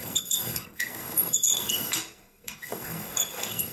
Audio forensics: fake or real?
fake